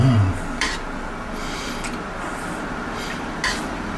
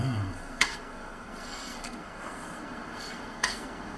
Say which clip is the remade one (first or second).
second